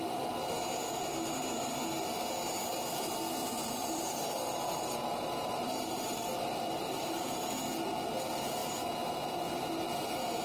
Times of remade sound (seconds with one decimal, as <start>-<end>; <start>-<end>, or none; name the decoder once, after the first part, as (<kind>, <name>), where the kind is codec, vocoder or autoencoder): 3.4-7.4 (vocoder, BigVGAN v2)

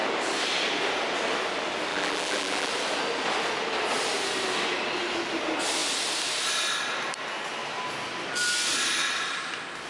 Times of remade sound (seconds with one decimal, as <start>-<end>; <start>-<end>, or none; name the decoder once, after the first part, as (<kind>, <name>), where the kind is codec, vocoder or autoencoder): 1.9-2.7 (vocoder, BigVGAN v2)

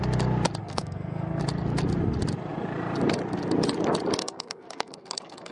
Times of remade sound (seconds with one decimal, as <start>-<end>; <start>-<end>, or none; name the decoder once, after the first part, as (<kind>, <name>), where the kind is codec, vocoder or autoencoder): 0.6-1.4 (codec, SNAC); 4.2-5.5

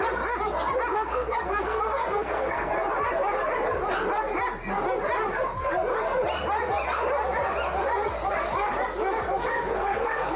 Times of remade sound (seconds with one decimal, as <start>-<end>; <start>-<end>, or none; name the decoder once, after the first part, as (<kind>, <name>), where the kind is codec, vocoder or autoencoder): 0.9-2.7 (codec, SNAC); 9.5-10.4

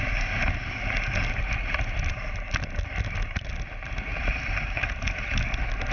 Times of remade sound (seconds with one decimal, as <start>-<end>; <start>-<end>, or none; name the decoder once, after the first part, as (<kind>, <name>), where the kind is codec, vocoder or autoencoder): 4.1-4.9 (vocoder, BigVGAN v2)

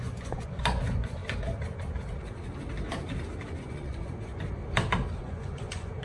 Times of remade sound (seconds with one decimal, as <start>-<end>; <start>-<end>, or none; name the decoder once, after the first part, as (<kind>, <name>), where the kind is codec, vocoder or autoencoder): 0.0-1.2 (vocoder, Vocos); 3.6-4.6; 5.2-6.0

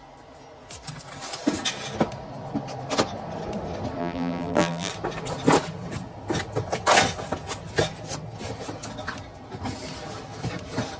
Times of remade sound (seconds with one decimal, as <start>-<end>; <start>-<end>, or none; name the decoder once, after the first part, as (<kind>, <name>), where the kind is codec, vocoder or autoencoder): 4.0-4.9 (vocoder, BigVGAN v2)

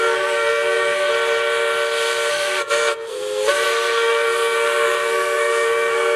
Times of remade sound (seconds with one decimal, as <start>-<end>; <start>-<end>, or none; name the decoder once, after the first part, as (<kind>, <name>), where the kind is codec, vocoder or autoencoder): 0.0-1.1 (codec, SNAC); 2.3-6.2